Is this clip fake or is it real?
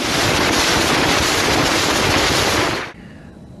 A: real